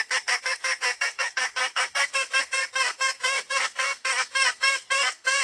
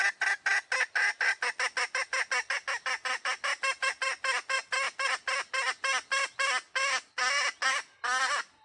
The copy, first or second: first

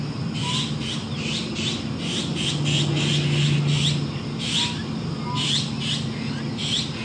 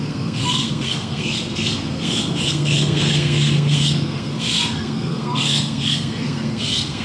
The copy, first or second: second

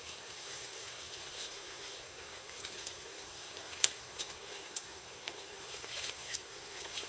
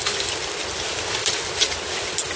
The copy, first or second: first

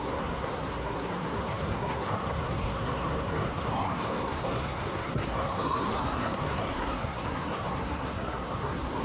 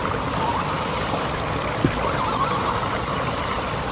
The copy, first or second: first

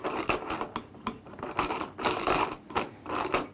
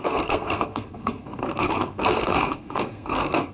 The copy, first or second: second